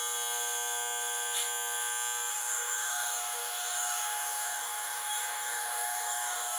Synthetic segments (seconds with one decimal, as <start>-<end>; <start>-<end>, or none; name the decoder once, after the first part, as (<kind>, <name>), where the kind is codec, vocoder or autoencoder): 2.3-6.6 (codec, DAC)